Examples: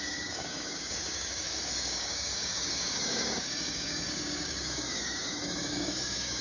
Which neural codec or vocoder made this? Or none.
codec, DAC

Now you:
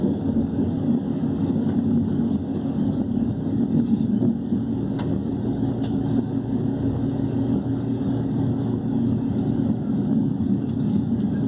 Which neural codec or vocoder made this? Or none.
codec, DAC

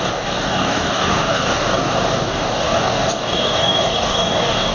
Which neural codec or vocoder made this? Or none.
codec, DAC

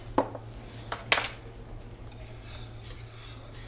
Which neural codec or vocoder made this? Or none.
none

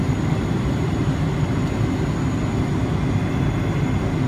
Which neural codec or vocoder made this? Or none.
none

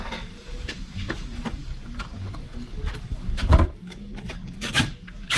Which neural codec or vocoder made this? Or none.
codec, DAC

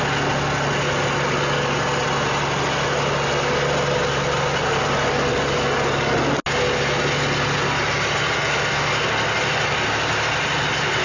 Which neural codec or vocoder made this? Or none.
none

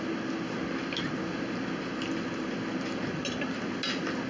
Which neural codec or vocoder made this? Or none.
none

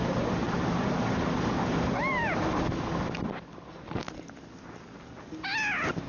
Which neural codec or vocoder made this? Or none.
none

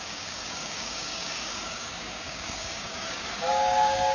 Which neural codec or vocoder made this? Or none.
codec, DAC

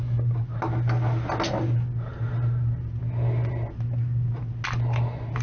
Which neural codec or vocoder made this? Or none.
none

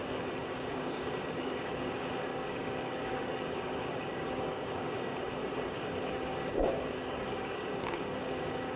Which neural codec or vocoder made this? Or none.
codec, DAC